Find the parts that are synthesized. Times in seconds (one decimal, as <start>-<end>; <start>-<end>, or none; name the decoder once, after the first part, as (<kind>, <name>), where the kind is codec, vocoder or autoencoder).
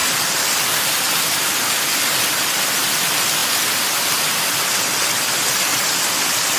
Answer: 0.0-0.9 (vocoder, BigVGAN v2)